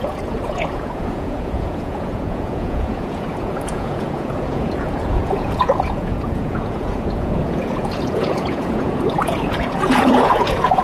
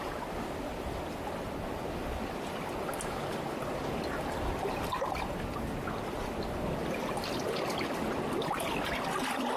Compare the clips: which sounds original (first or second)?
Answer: second